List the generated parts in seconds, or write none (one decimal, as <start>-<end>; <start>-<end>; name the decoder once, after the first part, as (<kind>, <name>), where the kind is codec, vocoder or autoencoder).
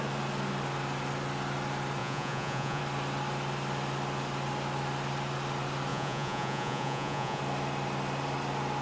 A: 2.0-2.8 (vocoder, Vocos); 5.9-7.4